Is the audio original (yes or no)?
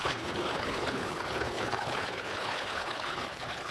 no